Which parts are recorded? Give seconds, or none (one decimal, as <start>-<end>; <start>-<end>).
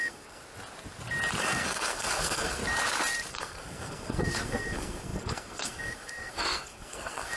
0.4-1.4; 2.6-3.3